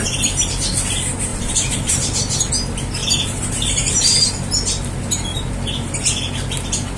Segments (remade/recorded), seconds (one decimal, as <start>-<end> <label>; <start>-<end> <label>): 0.0-1.3 recorded; 1.3-2.5 remade; 2.5-3.0 recorded; 3.0-4.3 remade; 4.3-7.0 recorded